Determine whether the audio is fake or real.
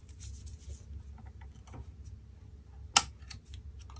real